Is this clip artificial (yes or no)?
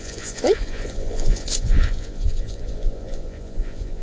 yes